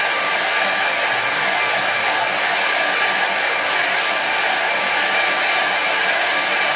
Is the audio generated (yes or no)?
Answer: yes